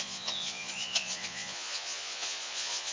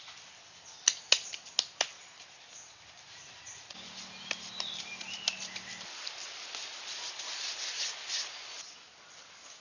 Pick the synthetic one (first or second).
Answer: first